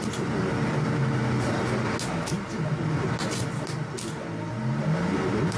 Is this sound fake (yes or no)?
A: no